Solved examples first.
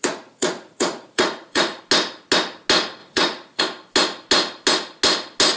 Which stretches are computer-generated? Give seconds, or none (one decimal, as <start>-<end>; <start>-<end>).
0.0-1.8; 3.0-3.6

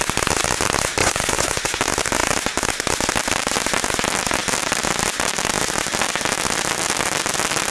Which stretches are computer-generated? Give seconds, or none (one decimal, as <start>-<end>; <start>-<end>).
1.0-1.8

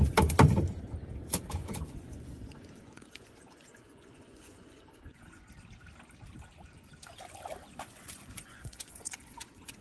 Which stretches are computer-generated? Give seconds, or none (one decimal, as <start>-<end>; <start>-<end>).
1.6-5.4; 7.6-9.8

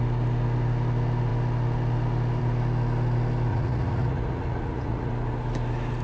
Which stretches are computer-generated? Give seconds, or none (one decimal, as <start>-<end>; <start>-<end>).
3.5-5.1

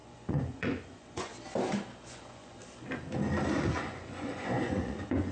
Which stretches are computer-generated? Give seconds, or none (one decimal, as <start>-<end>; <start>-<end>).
0.0-1.3; 2.1-2.6; 3.5-5.3

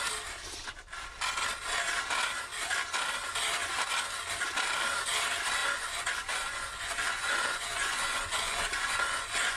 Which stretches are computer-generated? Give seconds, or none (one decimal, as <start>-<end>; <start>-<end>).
5.6-9.6

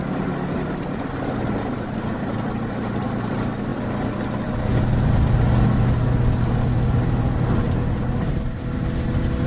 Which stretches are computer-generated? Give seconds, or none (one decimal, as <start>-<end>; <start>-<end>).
none